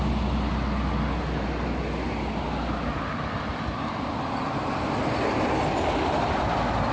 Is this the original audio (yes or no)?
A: yes